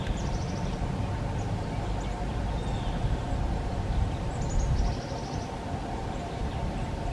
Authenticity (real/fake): real